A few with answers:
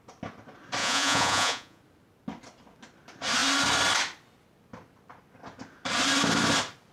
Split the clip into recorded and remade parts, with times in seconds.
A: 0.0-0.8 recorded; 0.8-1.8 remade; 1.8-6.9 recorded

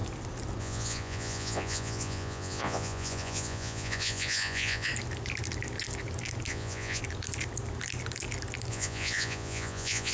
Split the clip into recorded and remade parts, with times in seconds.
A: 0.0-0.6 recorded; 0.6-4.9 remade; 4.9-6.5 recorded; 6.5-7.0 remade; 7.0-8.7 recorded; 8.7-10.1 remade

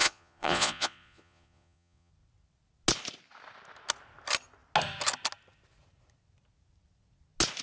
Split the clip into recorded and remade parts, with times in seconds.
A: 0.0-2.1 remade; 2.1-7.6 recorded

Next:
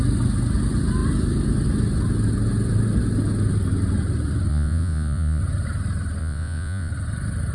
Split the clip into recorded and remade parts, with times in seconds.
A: 0.0-4.5 recorded; 4.5-5.4 remade; 5.4-6.2 recorded; 6.2-6.9 remade; 6.9-7.5 recorded

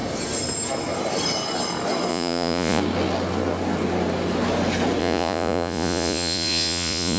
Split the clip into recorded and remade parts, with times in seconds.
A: 0.0-2.1 recorded; 2.1-2.8 remade; 2.8-5.0 recorded; 5.0-7.2 remade

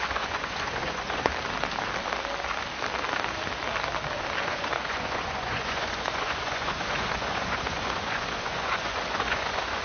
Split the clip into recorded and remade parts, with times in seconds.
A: 0.0-1.3 remade; 1.3-4.4 recorded; 4.4-9.8 remade

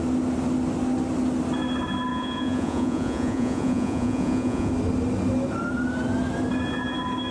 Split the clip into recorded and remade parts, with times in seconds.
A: 0.0-2.1 recorded; 2.1-4.7 remade; 4.7-7.3 recorded